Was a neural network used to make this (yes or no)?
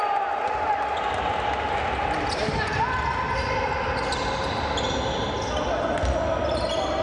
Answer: no